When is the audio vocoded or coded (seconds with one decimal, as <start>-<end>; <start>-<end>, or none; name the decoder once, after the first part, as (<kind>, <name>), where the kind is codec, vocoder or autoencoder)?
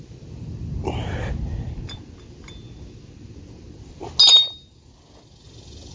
none